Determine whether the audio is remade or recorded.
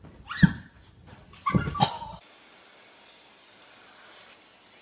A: remade